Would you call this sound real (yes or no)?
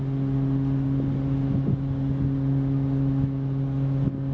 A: yes